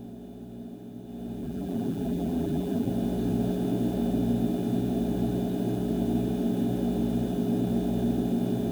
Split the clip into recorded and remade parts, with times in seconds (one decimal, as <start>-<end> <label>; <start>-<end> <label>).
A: 0.0-1.4 recorded; 1.4-2.9 remade; 2.9-8.7 recorded